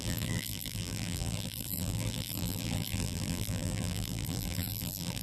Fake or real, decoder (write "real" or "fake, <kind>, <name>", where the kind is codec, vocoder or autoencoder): fake, vocoder, BigVGAN v2